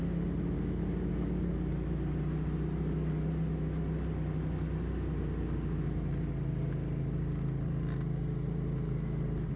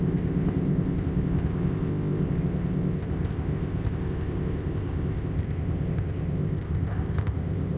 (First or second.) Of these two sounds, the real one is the first